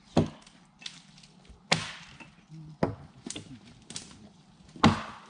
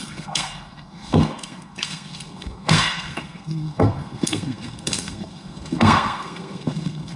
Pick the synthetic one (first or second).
second